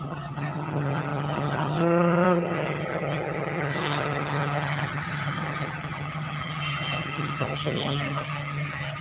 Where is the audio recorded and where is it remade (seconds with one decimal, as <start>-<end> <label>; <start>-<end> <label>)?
0.0-9.0 remade